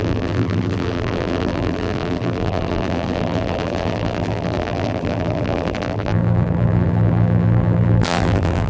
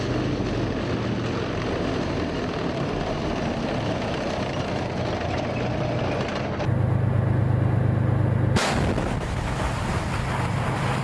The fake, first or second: first